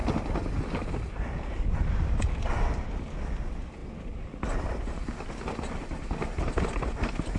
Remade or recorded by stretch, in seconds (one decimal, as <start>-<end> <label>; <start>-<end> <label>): 0.0-7.4 recorded